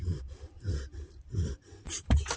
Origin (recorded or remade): remade